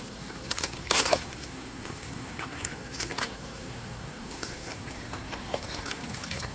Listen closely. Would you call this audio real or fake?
fake